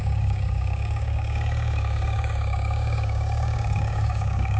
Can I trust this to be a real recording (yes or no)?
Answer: no